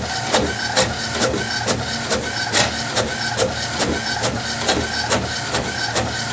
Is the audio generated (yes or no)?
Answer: no